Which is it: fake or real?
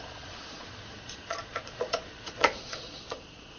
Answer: fake